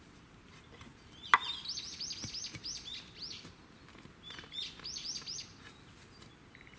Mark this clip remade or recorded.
recorded